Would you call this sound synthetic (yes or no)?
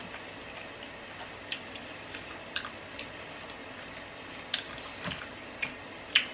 no